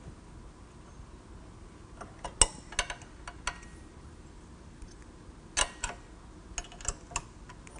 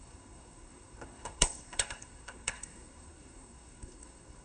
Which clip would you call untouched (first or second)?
first